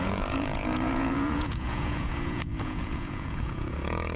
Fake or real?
fake